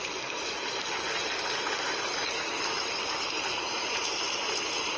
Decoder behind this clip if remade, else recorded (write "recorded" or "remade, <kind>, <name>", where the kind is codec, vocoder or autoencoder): recorded